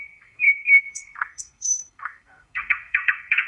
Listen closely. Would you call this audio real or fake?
fake